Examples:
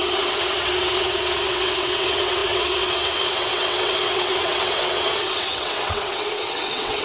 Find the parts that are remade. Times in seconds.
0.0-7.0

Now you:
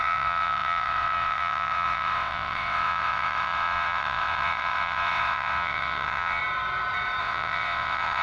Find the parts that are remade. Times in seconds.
0.0-6.4; 7.2-8.2

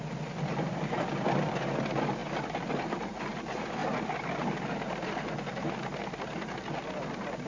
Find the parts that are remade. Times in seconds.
none

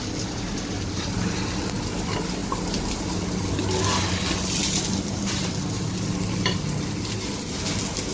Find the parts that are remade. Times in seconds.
none